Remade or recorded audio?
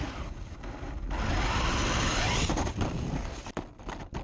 remade